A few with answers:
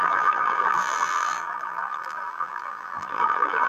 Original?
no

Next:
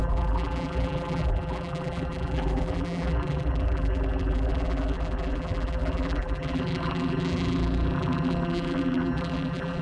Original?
no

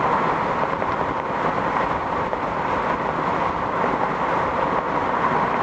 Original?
yes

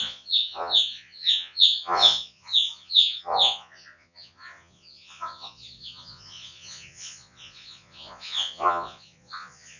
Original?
no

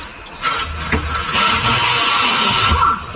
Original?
yes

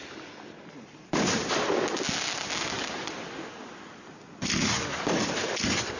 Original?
yes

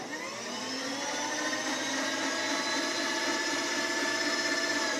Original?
yes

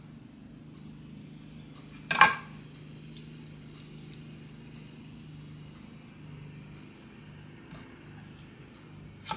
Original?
yes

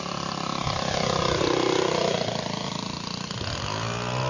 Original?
yes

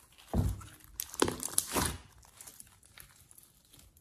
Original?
yes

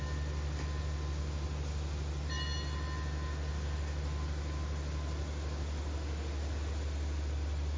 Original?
yes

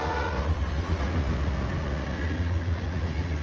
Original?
no